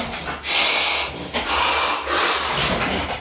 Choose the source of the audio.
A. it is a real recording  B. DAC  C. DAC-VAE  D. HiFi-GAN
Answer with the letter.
A